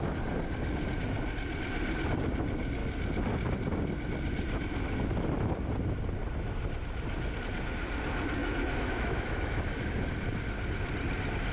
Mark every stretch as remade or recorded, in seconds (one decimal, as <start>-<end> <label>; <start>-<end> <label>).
0.0-8.4 recorded; 8.4-10.0 remade; 10.0-11.5 recorded

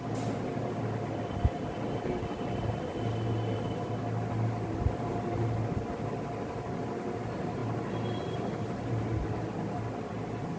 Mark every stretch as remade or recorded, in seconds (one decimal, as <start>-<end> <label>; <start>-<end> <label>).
0.0-10.6 recorded